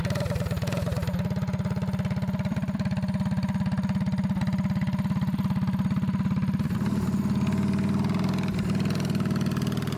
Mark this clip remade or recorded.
recorded